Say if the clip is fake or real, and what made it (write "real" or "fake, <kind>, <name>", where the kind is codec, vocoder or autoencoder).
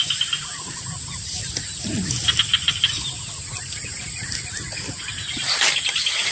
real